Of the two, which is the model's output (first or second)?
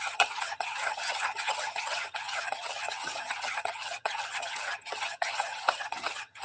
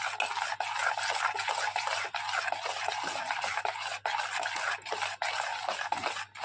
first